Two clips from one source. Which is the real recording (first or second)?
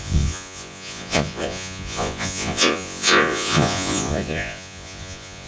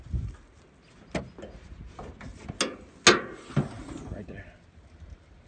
second